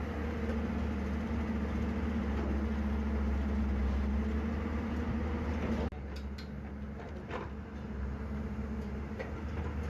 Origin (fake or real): real